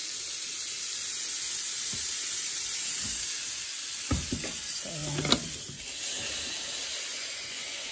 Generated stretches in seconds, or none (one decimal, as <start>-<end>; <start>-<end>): 7.1-7.9